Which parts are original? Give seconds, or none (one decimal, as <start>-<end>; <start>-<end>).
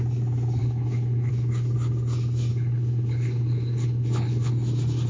0.0-0.6; 1.3-2.5; 4.5-5.1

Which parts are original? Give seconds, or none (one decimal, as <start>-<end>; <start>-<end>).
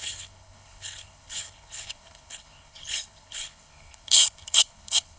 none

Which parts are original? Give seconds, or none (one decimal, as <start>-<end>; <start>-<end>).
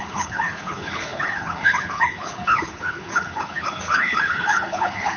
none